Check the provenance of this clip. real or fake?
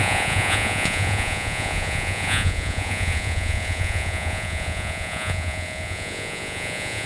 fake